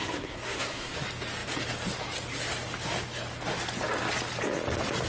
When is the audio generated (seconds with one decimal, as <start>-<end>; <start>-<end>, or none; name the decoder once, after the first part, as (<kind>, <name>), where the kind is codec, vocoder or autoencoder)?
0.0-1.0 (codec, SNAC)